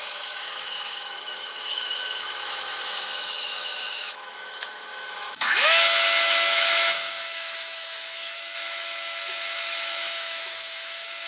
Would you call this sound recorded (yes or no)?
no